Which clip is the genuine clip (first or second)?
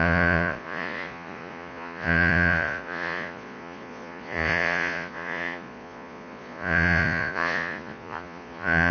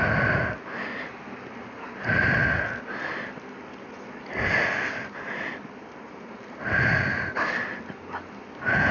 second